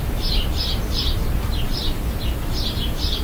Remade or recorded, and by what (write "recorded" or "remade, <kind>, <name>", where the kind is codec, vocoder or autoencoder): remade, vocoder, BigVGAN v2